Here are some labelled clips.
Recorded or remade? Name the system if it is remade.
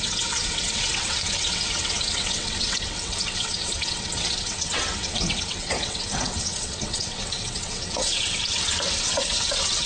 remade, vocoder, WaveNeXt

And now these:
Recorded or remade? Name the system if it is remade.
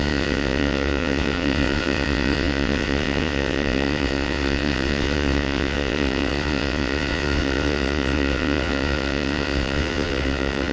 remade, vocoder, WaveNeXt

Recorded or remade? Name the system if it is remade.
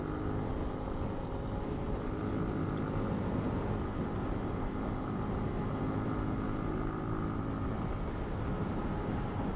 recorded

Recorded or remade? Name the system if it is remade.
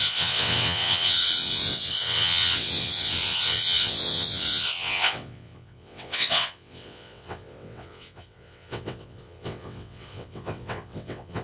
remade, vocoder, WaveNeXt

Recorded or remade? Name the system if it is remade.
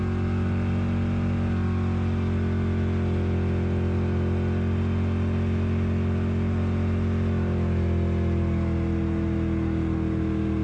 recorded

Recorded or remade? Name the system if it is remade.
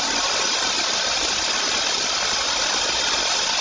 recorded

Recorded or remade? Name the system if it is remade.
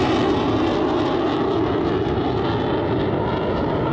recorded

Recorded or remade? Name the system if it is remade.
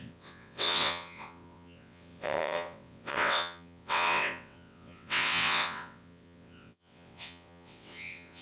remade, vocoder, WaveNeXt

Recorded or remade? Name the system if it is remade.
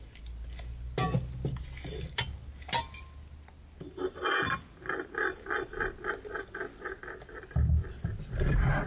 recorded